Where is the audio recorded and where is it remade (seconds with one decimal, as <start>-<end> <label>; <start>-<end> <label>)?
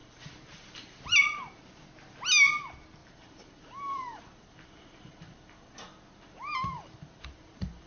0.0-1.6 remade; 1.6-3.0 recorded; 3.0-7.9 remade